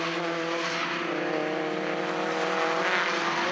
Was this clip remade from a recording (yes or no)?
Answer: no